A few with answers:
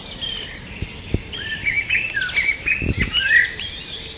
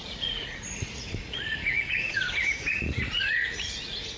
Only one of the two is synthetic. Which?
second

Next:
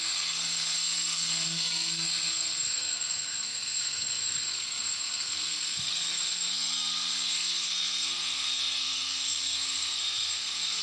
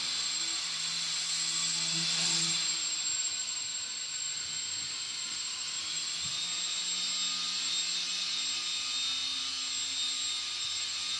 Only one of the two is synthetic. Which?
first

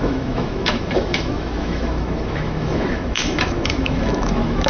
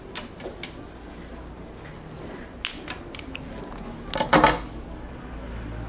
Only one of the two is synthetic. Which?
first